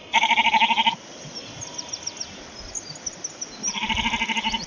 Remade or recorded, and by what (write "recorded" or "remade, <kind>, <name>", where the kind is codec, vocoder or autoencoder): recorded